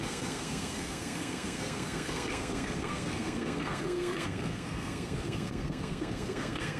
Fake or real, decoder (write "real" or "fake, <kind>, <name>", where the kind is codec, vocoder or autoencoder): fake, codec, SNAC